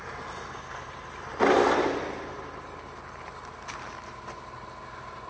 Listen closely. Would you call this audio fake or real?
real